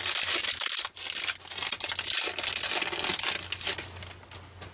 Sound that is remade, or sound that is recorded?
recorded